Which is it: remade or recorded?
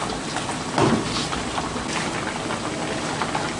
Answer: recorded